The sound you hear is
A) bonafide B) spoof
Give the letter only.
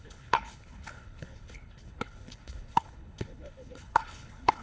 B